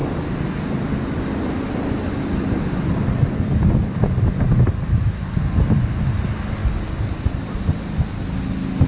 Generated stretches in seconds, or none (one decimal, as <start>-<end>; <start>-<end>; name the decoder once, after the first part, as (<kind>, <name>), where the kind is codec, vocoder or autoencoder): none